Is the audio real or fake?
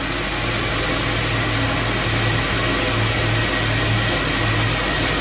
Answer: real